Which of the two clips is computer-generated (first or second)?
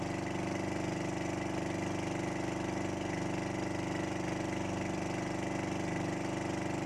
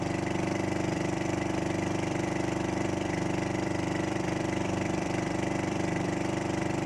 second